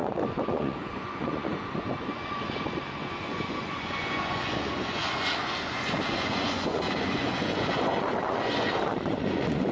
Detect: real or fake fake